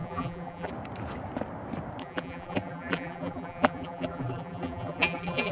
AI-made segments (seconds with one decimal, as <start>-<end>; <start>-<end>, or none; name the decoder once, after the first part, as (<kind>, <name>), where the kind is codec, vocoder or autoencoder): 0.0-0.7 (vocoder, BigVGAN v2); 2.0-5.5